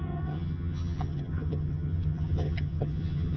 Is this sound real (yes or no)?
no